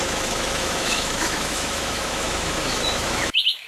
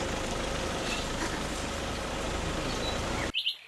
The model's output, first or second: first